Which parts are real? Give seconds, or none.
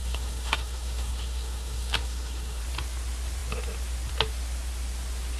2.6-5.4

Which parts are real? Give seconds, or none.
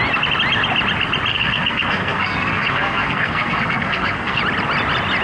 0.0-1.3; 4.4-5.2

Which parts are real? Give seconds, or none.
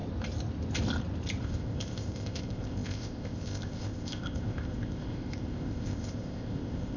0.0-1.4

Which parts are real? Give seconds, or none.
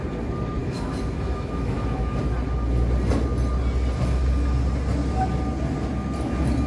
0.0-0.6; 2.2-6.7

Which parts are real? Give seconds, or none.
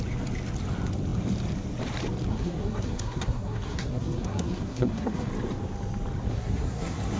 0.0-2.3; 5.3-6.3